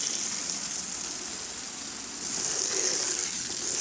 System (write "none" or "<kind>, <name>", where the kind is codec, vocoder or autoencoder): none